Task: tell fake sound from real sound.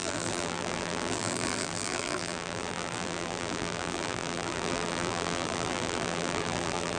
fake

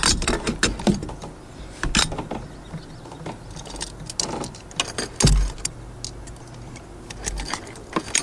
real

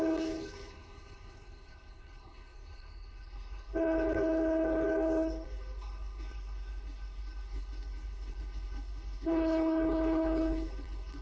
fake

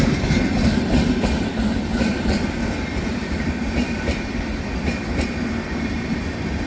fake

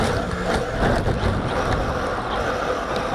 real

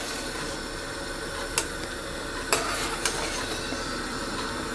real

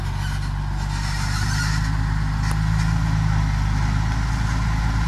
real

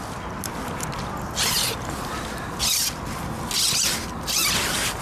real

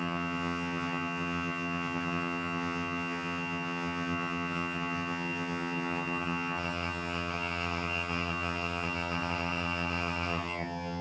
fake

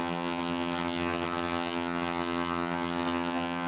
fake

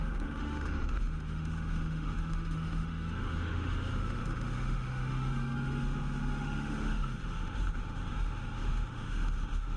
fake